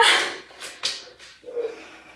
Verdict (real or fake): real